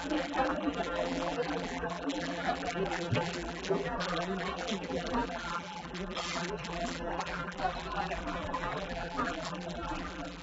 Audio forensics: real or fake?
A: fake